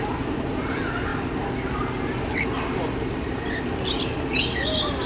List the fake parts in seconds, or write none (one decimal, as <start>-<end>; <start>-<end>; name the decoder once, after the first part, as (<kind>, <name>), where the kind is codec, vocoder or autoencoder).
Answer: 0.0-1.1 (vocoder, BigVGAN v2); 4.0-5.1